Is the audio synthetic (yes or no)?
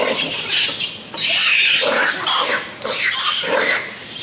no